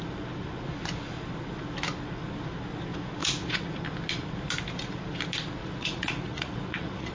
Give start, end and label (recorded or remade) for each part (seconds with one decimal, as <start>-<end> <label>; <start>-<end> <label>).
0.0-3.2 recorded; 3.2-3.8 remade; 3.8-5.6 recorded; 5.6-7.1 remade